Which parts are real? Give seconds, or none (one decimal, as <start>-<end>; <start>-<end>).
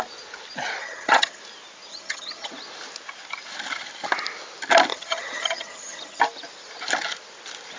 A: 0.0-0.8; 1.4-1.9; 2.5-4.9; 6.2-7.8